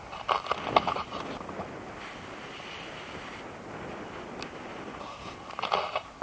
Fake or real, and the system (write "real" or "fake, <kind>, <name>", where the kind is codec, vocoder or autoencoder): real